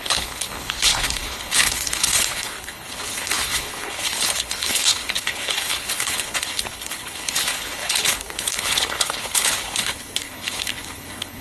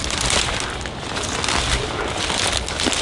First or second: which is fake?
first